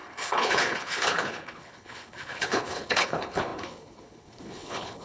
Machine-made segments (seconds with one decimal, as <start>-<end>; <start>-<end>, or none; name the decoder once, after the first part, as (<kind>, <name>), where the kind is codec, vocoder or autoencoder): 0.0-5.0 (codec, HILCodec)